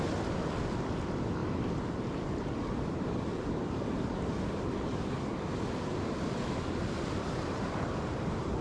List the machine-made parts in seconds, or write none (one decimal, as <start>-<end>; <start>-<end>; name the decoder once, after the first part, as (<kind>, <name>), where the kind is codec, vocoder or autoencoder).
0.0-1.4 (vocoder, BigVGAN v2); 2.8-8.6